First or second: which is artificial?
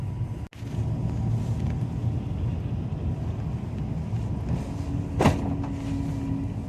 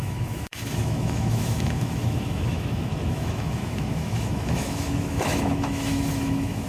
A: second